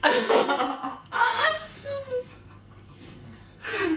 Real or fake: fake